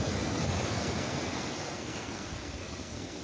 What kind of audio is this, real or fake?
fake